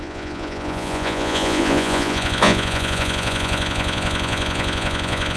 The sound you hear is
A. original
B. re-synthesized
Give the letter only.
B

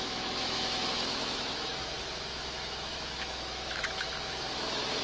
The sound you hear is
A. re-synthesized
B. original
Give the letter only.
A